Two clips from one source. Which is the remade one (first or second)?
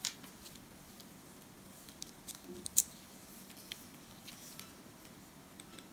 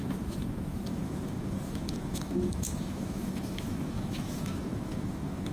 second